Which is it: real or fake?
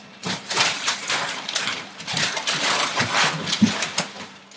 fake